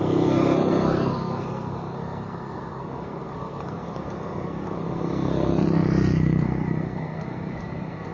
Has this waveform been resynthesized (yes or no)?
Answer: yes